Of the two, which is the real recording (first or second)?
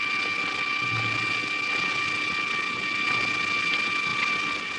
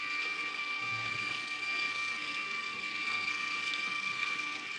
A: first